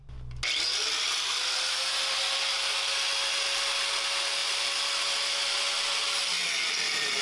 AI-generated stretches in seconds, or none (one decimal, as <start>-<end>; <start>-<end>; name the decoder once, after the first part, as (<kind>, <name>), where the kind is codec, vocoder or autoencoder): none